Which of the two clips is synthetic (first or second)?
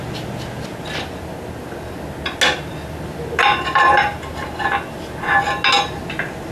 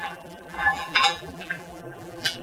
second